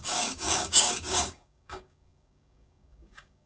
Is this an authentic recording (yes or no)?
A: no